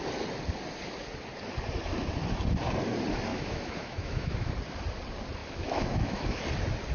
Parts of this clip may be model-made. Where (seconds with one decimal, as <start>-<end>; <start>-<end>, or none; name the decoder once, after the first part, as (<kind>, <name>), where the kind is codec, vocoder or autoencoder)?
3.3-4.5 (autoencoder, DAC-VAE); 5.4-6.4